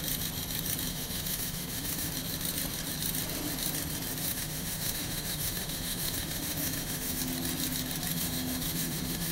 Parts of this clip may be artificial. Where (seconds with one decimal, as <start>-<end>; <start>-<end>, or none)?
0.9-2.1; 4.2-7.2; 8.1-9.3